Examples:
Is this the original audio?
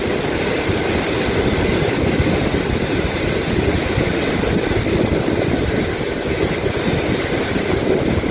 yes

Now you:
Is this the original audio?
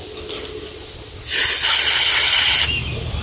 yes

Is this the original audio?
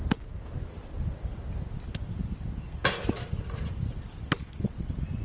yes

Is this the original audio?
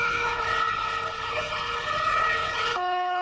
no